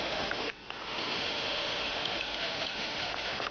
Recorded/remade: remade